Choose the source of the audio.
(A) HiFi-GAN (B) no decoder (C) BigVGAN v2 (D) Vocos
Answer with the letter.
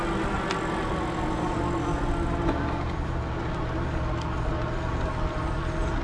B